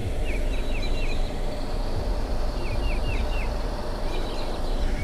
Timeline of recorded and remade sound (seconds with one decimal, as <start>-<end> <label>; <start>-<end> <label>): 0.0-5.0 remade